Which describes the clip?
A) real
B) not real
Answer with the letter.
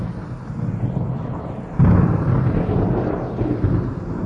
A